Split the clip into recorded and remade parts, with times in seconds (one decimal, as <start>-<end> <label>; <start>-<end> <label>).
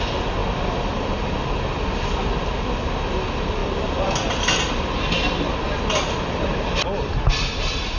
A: 0.0-8.0 recorded